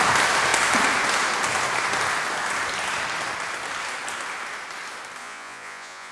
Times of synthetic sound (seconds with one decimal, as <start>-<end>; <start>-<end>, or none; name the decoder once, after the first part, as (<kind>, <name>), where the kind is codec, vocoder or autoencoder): 5.2-6.1 (vocoder, Vocos)